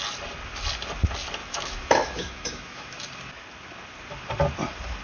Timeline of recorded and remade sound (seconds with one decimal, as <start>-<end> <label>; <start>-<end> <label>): 0.0-1.4 recorded; 1.4-3.1 remade; 3.1-5.0 recorded